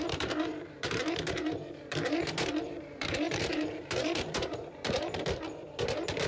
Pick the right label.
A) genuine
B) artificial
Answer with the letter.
B